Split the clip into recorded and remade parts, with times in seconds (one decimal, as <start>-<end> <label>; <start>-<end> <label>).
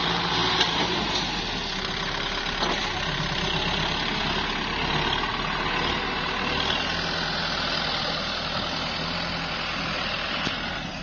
0.0-0.4 recorded; 0.4-1.4 remade; 1.4-11.0 recorded